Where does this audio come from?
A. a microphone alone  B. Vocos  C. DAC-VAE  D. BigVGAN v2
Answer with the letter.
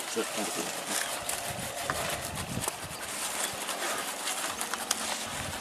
A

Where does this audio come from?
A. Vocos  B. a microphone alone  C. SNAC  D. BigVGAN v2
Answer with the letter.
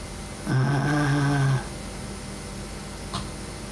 B